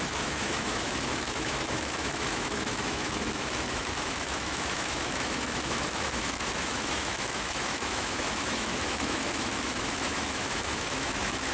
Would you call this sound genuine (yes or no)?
no